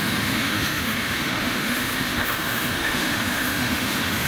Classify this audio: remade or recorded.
remade